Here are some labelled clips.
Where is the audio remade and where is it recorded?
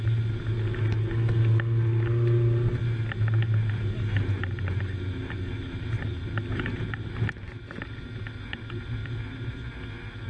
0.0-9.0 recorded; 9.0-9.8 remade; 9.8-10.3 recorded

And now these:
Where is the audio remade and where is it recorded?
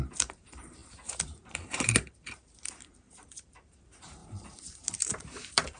0.0-5.8 remade